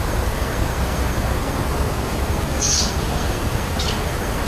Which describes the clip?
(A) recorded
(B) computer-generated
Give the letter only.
B